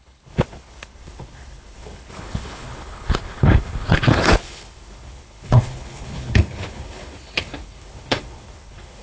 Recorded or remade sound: remade